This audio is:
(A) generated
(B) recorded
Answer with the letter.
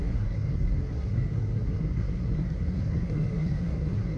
A